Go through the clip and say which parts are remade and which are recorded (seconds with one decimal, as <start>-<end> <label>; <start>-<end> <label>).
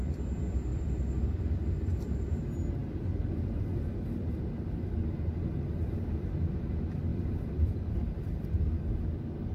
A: 0.0-0.7 recorded; 0.7-2.3 remade; 2.3-2.8 recorded; 2.8-4.8 remade; 4.8-7.1 recorded; 7.1-7.9 remade; 7.9-9.5 recorded